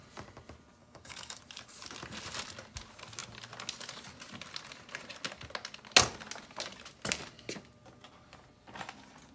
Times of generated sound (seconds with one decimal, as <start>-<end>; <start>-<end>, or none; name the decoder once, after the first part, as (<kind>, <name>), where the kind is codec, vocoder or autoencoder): 0.8-1.4 (codec, DAC)

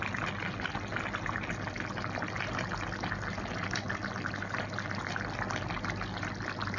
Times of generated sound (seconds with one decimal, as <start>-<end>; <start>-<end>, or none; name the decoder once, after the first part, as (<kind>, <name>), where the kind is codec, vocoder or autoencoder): none

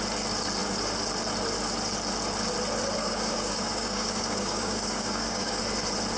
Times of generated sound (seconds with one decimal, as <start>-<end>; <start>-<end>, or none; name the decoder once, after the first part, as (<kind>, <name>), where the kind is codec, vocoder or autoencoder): 3.0-5.6 (codec, DAC)

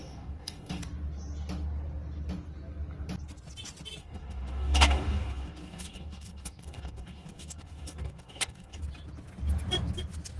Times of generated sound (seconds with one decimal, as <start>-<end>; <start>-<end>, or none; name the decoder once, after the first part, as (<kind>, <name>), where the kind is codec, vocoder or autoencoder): 0.0-0.8 (codec, DAC); 4.0-8.8

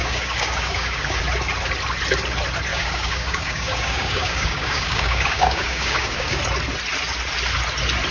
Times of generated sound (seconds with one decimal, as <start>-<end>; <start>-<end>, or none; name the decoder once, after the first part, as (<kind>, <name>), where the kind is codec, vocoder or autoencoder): 0.0-1.2 (codec, DAC); 2.7-6.4

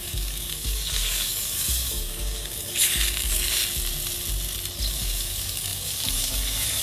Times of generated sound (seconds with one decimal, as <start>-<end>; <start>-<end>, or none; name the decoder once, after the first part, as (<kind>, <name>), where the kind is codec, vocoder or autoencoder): 0.0-3.6 (codec, DAC); 4.9-6.8

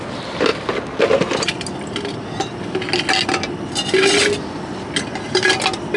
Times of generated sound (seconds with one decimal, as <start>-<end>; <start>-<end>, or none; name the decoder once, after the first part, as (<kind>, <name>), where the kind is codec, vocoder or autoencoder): none

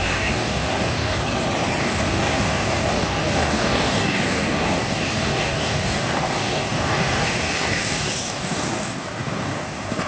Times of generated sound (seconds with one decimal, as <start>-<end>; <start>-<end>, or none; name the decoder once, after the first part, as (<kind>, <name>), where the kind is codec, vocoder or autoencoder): 0.0-1.3 (codec, DAC); 1.8-10.1